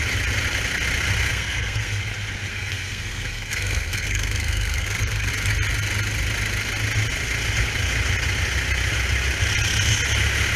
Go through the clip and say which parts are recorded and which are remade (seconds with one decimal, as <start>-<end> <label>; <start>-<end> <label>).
0.0-1.3 recorded; 1.3-2.0 remade; 2.0-2.5 recorded; 2.5-5.3 remade; 5.3-10.6 recorded